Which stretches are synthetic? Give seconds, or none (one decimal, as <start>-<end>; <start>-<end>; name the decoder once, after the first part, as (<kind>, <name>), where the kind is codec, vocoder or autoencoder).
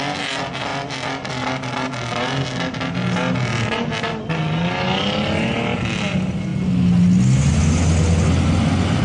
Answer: none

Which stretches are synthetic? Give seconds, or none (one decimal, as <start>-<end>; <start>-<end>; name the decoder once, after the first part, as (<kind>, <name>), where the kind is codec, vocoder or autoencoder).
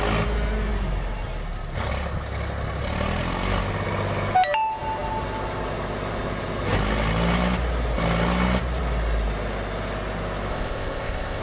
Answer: 10.5-11.4 (codec, ZipCodec)